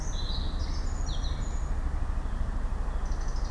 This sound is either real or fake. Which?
real